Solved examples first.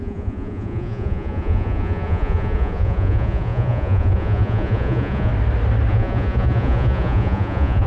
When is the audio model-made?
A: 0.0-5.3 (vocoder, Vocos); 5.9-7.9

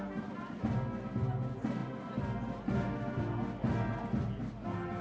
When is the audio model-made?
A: none